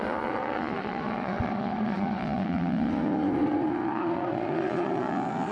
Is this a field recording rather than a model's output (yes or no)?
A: no